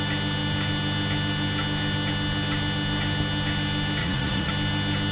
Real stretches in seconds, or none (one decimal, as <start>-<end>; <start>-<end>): 0.0-4.0; 4.5-5.1